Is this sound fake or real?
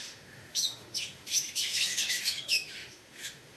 fake